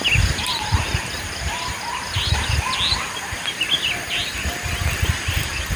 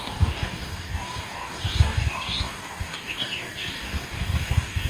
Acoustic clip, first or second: first